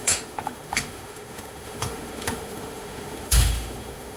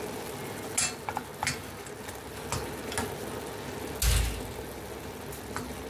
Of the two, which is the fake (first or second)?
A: first